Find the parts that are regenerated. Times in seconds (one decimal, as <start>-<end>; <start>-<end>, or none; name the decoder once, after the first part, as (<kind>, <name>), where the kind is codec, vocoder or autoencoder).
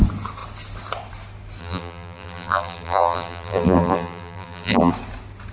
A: 1.6-4.9 (vocoder, BigVGAN v2)